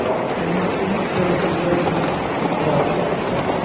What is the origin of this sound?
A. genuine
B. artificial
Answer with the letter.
A